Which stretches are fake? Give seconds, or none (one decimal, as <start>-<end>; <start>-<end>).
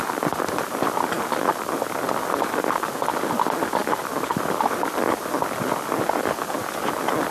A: none